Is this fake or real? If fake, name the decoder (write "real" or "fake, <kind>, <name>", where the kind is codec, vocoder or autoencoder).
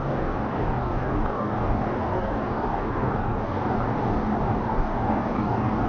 fake, codec, DAC